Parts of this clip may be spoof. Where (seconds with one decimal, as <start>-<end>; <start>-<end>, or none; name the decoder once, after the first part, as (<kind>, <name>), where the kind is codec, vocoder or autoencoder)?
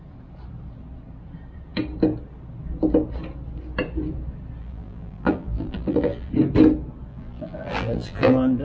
4.6-6.3 (vocoder, BigVGAN v2); 7.1-8.6